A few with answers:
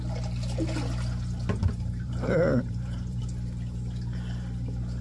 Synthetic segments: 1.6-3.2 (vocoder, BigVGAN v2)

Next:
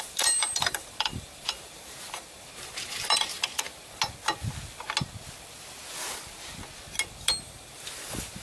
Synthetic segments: 0.0-3.5 (vocoder, BigVGAN v2); 7.4-8.4